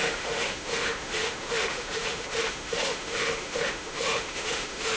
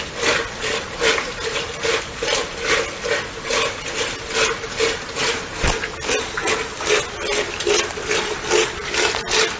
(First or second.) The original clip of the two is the second